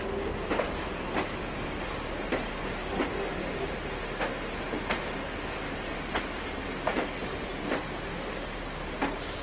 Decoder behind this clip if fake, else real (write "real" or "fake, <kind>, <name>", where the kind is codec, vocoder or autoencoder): real